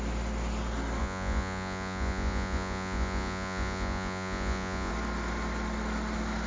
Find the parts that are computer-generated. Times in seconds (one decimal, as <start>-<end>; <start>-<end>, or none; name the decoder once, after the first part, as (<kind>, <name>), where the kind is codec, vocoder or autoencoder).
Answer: 1.0-4.9 (vocoder, Vocos)